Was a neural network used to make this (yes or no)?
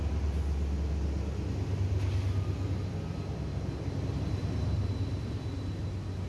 no